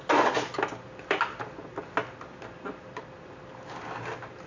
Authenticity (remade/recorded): recorded